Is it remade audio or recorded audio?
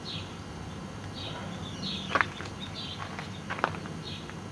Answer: recorded